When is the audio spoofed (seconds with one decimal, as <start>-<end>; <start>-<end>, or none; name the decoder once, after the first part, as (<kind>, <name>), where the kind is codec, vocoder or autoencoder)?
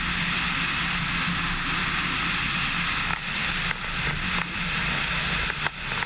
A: none